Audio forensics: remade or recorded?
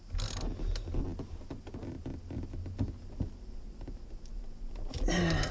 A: recorded